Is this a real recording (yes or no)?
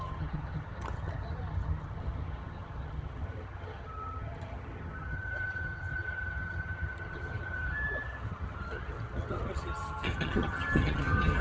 no